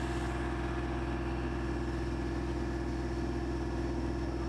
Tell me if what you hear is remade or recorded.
recorded